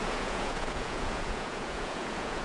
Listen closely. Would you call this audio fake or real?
fake